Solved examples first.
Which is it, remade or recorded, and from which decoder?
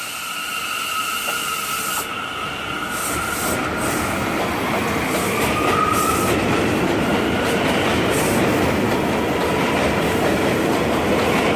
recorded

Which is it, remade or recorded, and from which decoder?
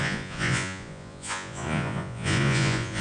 remade, vocoder, Vocos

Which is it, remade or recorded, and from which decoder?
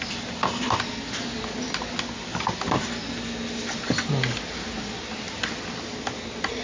recorded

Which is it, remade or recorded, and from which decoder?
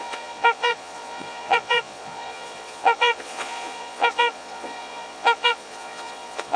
remade, vocoder, Vocos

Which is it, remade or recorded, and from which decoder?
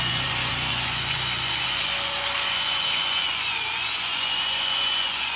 remade, vocoder, Vocos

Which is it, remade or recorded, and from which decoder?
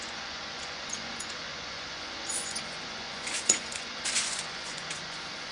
remade, vocoder, Vocos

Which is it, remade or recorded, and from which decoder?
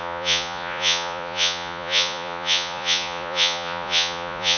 remade, vocoder, Vocos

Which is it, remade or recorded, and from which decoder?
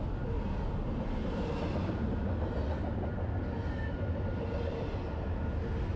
recorded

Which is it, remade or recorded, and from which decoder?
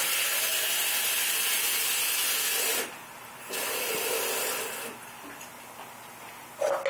recorded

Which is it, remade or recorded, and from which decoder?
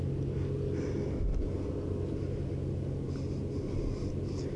recorded